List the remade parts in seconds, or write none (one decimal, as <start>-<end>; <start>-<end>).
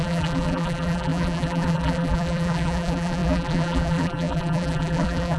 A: 0.0-5.4